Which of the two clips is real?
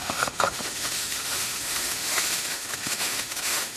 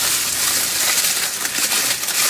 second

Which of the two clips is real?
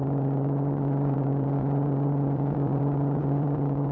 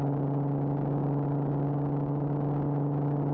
second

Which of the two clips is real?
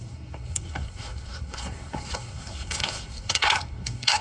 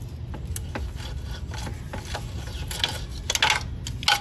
second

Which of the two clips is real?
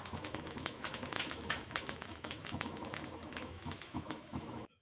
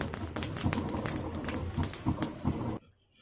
second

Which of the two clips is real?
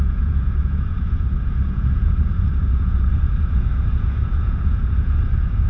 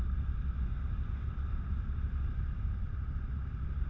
second